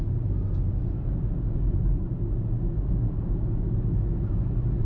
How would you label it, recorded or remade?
recorded